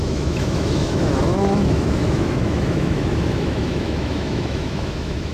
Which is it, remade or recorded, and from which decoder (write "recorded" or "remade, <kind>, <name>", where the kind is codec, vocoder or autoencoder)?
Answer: remade, autoencoder, DAC-VAE